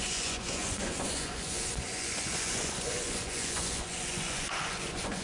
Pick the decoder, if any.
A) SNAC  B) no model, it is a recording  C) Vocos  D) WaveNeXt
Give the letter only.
C